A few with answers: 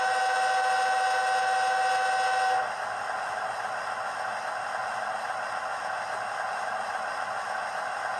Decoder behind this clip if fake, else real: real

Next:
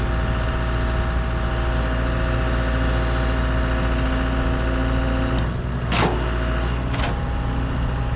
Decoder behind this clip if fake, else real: real